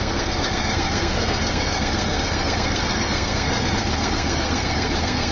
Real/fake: fake